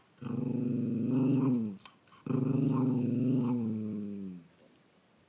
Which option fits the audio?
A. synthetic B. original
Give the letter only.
B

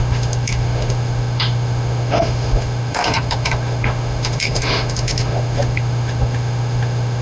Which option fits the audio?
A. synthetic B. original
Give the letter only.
A